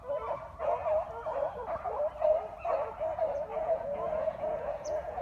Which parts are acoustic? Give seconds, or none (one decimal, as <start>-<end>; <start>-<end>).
0.0-3.5